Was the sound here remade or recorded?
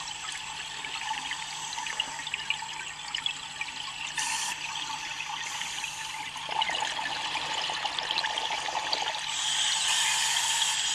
recorded